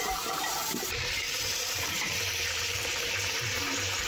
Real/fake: fake